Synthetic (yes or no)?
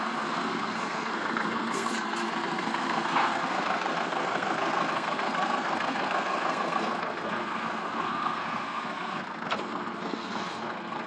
yes